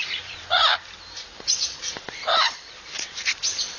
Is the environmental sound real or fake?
fake